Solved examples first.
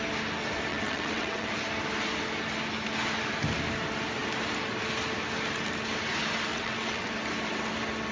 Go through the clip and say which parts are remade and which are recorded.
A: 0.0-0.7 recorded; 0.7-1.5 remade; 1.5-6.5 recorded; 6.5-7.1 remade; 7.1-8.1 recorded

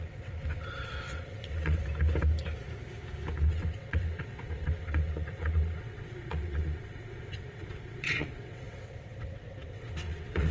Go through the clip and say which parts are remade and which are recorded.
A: 0.0-1.8 remade; 1.8-3.5 recorded; 3.5-10.5 remade

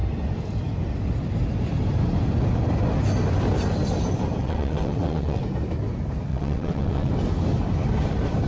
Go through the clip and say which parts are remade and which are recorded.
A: 0.0-4.4 recorded; 4.4-5.4 remade; 5.4-6.3 recorded; 6.3-7.1 remade; 7.1-8.5 recorded

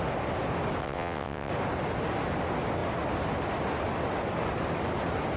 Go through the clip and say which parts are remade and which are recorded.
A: 0.0-0.8 recorded; 0.8-1.5 remade; 1.5-5.4 recorded

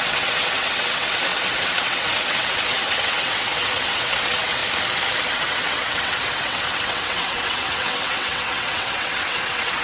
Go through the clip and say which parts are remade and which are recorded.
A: 0.0-4.6 remade; 4.6-5.3 recorded; 5.3-9.8 remade

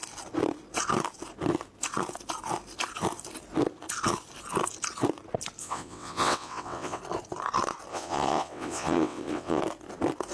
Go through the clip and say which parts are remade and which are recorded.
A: 0.0-5.6 recorded; 5.6-7.0 remade; 7.0-7.9 recorded; 7.9-9.6 remade; 9.6-10.3 recorded

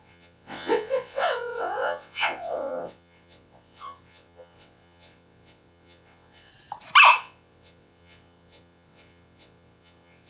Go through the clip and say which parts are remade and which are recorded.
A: 0.0-6.5 remade; 6.5-7.2 recorded; 7.2-10.3 remade